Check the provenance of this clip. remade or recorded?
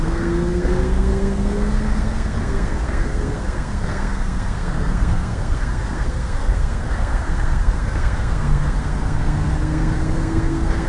remade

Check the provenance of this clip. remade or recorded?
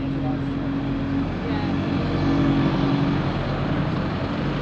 recorded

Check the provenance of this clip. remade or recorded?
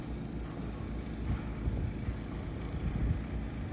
recorded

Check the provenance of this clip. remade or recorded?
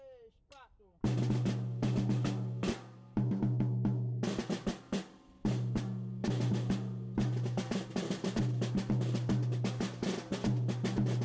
recorded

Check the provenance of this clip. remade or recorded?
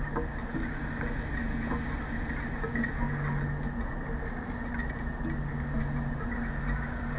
recorded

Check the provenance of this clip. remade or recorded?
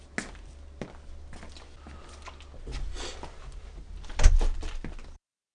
recorded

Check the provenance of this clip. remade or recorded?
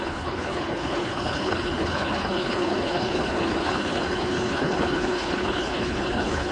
remade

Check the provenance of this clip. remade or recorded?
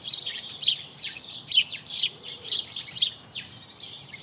remade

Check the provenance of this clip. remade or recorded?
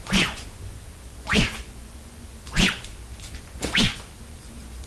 remade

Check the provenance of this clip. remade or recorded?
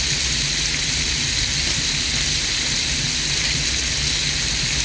recorded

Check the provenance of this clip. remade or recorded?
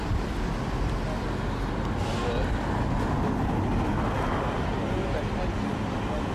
recorded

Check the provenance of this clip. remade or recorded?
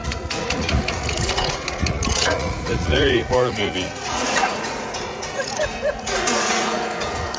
remade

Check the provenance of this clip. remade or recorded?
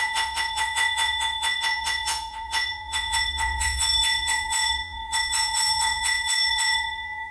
remade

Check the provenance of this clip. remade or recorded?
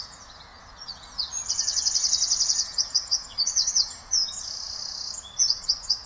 remade